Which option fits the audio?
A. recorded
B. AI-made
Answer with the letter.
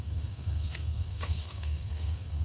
B